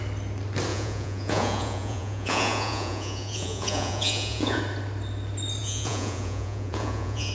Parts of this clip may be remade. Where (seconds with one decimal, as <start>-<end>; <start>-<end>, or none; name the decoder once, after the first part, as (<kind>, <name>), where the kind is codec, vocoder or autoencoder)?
0.7-4.6 (vocoder, Vocos); 5.6-7.3